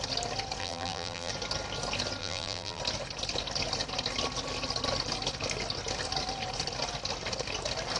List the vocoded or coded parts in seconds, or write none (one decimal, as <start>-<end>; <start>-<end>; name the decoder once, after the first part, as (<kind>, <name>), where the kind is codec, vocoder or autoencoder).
0.6-1.3 (vocoder, BigVGAN v2); 2.2-2.8